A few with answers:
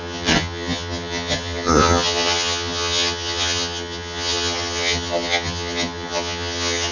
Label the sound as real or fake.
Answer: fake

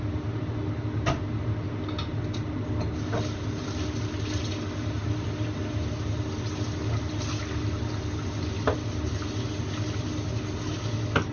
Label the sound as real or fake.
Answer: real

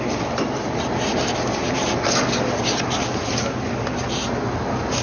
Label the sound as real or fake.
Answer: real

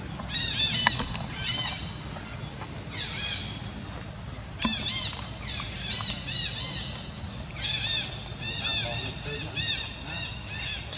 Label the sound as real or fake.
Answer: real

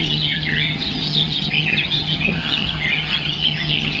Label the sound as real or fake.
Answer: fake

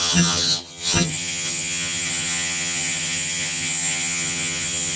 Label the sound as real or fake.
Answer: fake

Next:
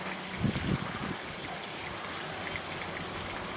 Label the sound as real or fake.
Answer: real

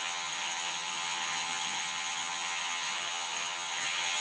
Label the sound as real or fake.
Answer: fake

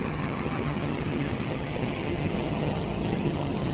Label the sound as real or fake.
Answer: fake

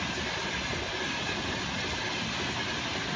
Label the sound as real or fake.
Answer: real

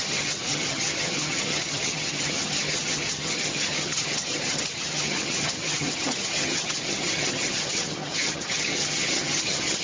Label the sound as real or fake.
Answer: fake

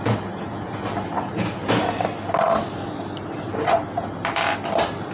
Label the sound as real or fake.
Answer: real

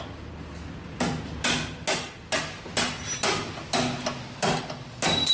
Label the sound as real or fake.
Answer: real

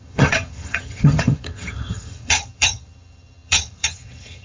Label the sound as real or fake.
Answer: fake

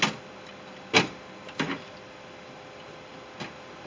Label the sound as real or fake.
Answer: real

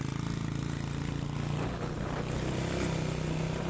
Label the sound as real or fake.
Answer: real